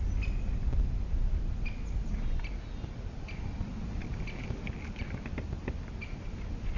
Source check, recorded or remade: recorded